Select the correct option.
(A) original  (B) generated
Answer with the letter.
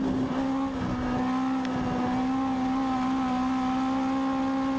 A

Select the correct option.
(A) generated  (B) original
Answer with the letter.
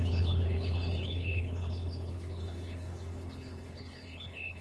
A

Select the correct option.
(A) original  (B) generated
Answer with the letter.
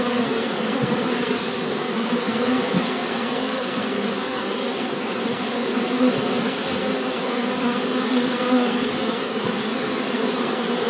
B